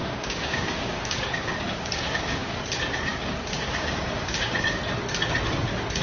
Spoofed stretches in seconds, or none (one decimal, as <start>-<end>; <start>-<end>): 0.0-2.6; 3.1-4.8